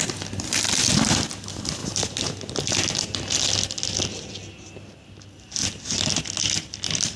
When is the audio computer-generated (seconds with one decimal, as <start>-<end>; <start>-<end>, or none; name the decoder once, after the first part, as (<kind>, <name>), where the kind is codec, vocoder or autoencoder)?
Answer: none